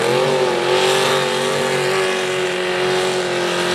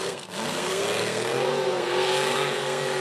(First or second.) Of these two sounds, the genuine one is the first